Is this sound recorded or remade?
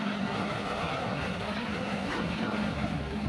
remade